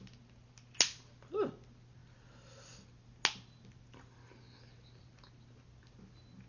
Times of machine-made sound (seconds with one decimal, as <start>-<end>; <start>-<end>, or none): none